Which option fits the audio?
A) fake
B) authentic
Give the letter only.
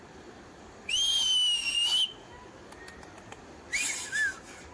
B